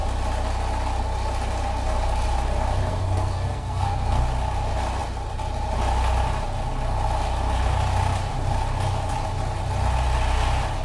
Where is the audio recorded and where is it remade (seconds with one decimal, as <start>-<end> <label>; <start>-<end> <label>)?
0.0-2.8 recorded; 2.8-4.2 remade; 4.2-10.8 recorded